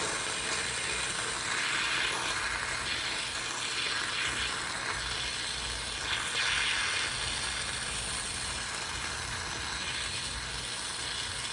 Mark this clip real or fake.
real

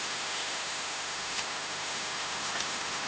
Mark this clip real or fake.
fake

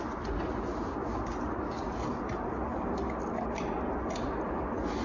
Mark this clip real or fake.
real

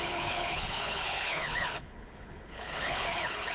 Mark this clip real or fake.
fake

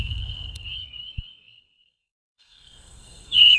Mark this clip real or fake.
fake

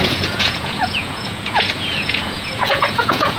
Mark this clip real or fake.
fake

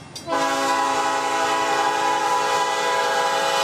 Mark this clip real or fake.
real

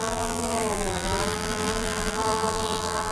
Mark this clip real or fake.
fake